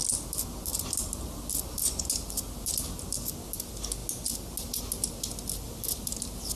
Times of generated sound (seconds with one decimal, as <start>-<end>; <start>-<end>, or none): none